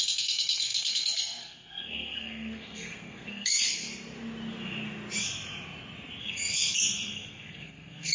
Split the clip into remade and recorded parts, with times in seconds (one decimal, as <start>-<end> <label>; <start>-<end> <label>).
0.0-3.9 remade; 3.9-6.2 recorded; 6.2-8.1 remade